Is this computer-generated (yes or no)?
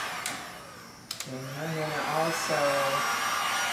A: no